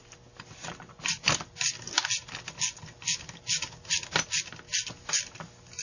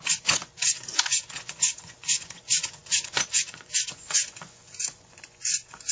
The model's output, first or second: second